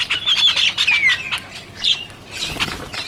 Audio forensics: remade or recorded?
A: recorded